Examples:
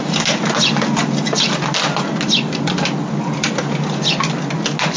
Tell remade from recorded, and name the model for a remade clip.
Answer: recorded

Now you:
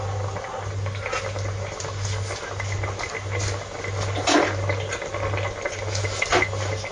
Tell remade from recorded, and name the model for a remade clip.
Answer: recorded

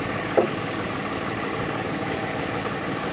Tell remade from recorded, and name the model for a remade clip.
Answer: remade, codec, DAC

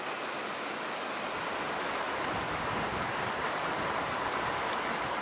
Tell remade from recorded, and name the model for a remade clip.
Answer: recorded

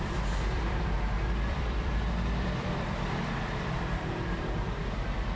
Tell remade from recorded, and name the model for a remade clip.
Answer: remade, vocoder, BigVGAN v2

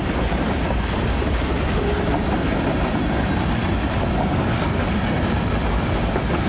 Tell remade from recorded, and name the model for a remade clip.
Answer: recorded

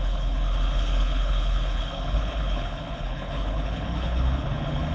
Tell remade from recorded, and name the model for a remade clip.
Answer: remade, codec, HILCodec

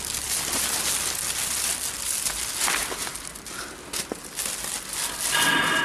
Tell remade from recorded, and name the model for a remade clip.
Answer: recorded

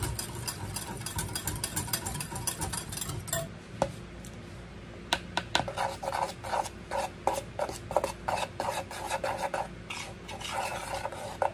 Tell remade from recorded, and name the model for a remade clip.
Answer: recorded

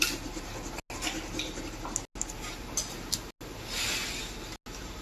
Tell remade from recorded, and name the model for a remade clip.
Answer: recorded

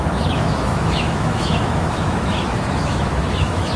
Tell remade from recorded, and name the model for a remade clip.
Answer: remade, autoencoder, DAC-VAE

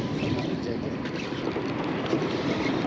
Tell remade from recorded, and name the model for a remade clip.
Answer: recorded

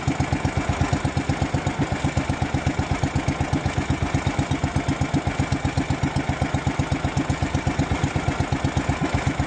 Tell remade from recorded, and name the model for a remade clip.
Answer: recorded